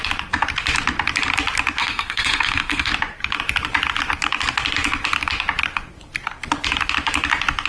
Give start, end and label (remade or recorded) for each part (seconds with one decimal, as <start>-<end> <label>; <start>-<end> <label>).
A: 0.0-1.8 recorded; 1.8-2.9 remade; 2.9-7.7 recorded